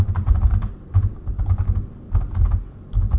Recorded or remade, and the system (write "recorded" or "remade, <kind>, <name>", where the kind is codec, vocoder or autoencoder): recorded